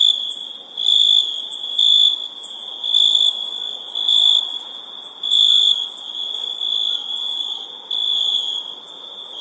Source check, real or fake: real